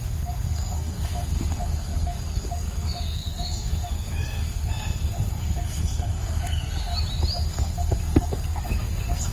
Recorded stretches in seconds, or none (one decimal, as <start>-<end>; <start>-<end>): 6.9-7.5